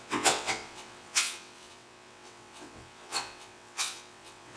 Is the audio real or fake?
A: fake